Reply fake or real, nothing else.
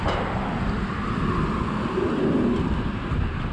real